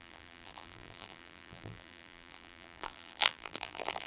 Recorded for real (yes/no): no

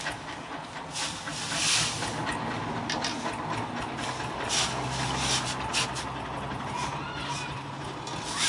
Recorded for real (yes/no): yes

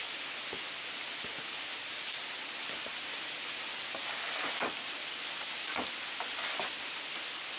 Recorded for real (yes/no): yes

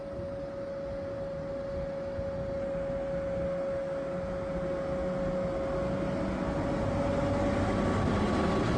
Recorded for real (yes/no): yes